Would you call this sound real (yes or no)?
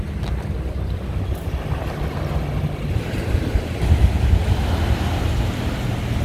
yes